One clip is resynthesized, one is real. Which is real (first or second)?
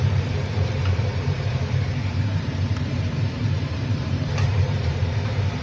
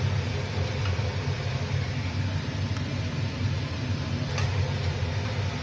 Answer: second